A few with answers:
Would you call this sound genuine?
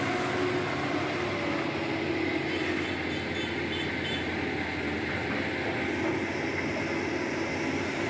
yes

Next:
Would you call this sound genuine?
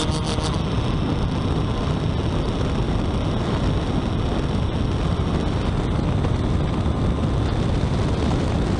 yes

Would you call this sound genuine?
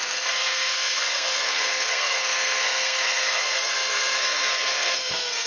no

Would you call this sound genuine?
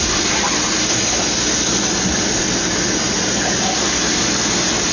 yes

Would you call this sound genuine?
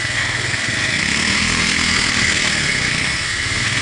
no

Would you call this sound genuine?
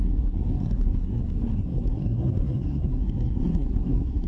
no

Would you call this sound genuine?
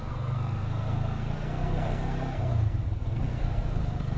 no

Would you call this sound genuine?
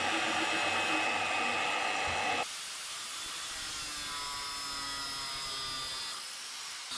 yes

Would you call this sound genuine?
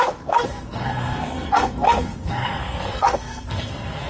no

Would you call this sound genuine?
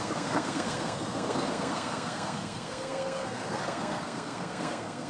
no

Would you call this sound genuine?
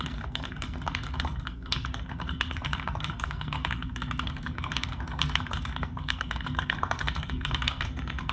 no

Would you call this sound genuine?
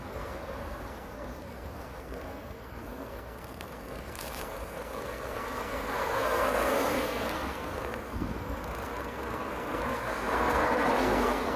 no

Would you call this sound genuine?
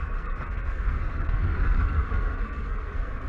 no